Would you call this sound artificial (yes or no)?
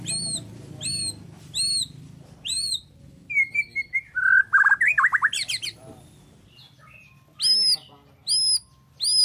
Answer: no